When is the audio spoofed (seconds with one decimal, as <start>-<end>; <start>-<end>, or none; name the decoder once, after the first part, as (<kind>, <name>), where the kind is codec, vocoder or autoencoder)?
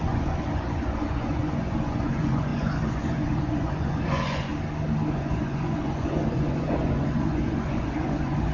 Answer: 0.0-4.5 (vocoder, Vocos); 5.1-8.5